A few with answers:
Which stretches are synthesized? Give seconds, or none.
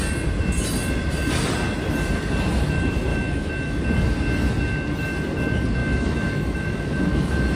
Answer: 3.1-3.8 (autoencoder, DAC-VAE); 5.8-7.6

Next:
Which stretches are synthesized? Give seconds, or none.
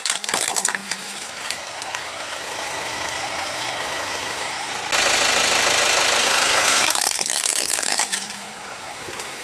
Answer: 0.0-4.7 (codec, SNAC); 6.2-9.4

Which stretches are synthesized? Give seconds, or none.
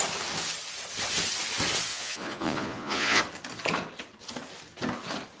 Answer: 1.9-3.2 (vocoder, Vocos)